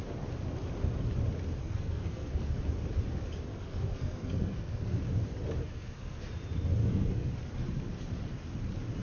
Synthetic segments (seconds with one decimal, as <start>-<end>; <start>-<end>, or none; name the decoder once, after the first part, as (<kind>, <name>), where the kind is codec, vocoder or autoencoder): 1.6-2.6 (codec, SNAC); 3.5-5.0; 5.6-6.2; 6.8-7.3